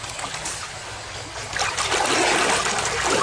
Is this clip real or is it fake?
real